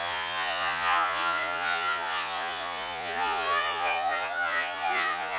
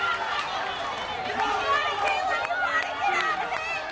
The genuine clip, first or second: second